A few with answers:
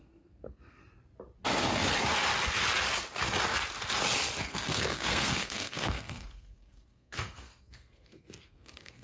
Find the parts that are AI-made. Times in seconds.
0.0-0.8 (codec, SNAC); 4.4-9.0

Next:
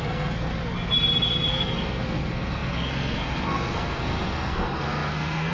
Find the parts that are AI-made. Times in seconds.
0.0-0.5 (codec, SNAC); 1.5-5.5

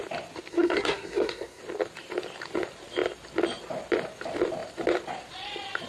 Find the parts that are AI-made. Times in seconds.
0.5-1.6 (codec, SNAC)

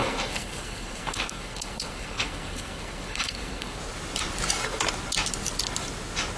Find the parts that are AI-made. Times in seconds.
0.0-3.8 (codec, SNAC)

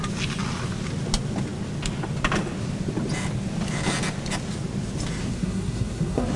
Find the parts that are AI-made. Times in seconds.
5.2-6.4 (codec, SNAC)

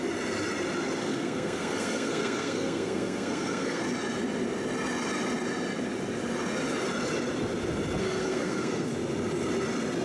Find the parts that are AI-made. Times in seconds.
1.0-3.8 (codec, SNAC); 8.0-8.9